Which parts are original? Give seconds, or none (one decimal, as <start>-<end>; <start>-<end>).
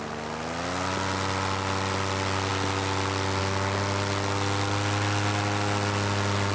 0.0-6.5